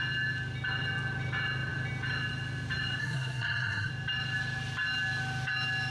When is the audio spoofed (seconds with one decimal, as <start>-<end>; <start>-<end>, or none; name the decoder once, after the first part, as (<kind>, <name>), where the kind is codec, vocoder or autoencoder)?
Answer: 3.0-3.9 (codec, SNAC)